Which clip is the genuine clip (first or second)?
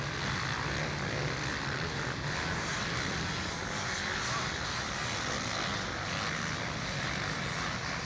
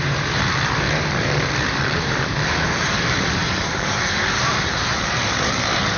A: first